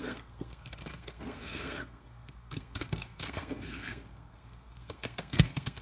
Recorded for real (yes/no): no